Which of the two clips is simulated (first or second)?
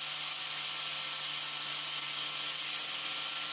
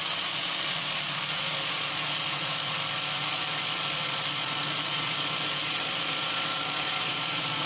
second